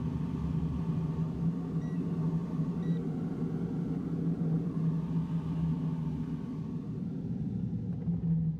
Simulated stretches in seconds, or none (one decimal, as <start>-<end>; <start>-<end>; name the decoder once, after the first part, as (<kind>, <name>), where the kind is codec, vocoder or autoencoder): 2.4-3.5 (vocoder, BigVGAN v2); 6.5-7.7